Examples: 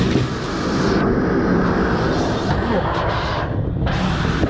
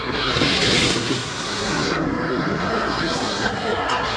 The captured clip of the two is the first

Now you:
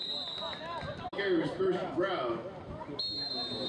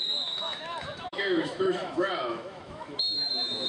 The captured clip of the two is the first